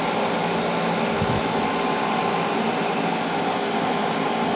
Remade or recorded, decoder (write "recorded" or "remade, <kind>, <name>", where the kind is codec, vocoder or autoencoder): recorded